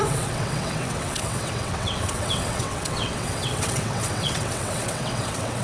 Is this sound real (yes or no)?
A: no